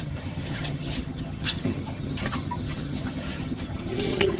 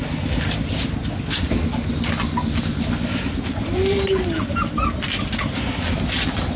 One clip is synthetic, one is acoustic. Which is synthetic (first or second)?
first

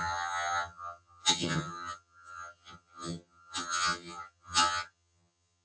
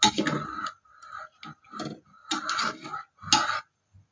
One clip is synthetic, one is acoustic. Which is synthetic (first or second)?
first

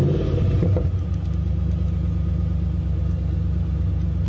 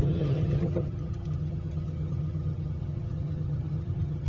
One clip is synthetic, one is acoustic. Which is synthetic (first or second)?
second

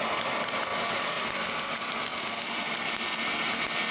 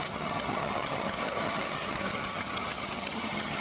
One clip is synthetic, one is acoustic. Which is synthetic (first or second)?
second